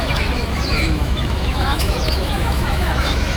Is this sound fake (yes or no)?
yes